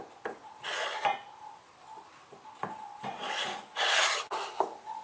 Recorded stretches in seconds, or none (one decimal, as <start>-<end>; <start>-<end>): 0.0-5.0